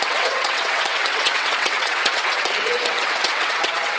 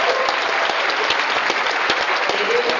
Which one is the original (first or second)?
second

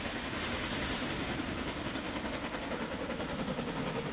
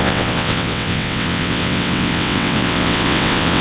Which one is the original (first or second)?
first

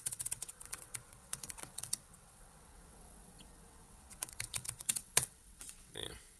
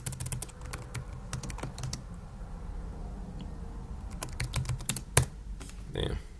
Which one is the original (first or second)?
second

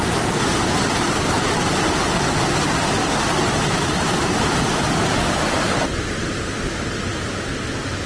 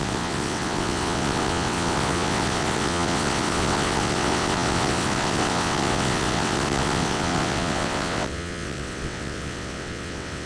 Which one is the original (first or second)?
first